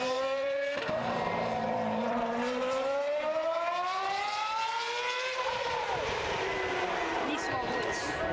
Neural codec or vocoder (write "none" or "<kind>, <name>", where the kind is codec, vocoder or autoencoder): vocoder, BigVGAN v2